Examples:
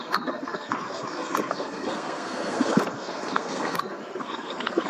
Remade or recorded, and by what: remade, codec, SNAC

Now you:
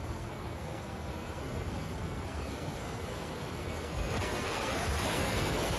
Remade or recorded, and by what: remade, codec, SNAC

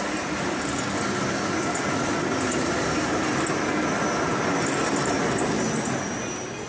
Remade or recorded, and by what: recorded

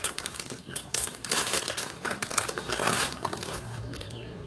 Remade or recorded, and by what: remade, codec, SNAC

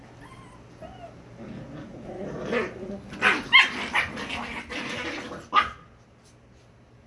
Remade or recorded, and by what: recorded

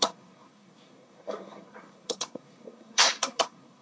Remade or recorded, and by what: remade, codec, SNAC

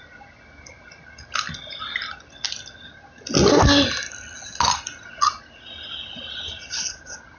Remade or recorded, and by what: recorded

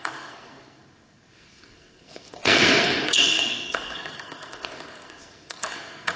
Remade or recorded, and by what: remade, codec, SNAC